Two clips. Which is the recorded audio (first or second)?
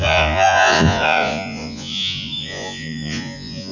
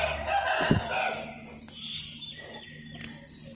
second